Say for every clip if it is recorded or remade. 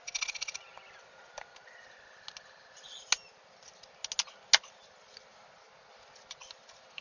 recorded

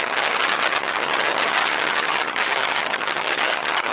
remade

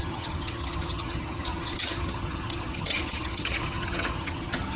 remade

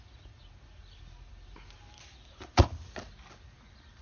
recorded